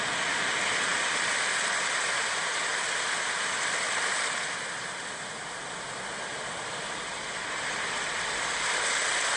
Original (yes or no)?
yes